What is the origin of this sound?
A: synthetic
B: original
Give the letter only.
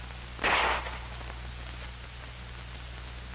B